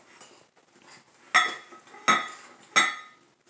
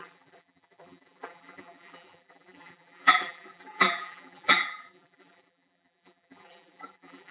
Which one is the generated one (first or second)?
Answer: second